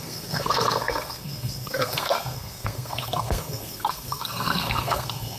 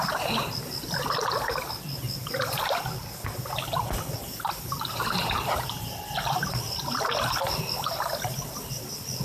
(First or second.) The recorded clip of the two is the second